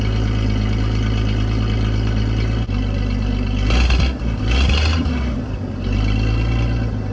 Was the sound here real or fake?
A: real